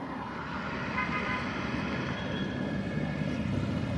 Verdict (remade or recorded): recorded